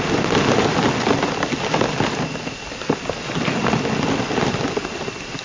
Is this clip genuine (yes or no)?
yes